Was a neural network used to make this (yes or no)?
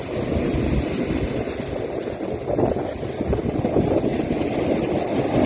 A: no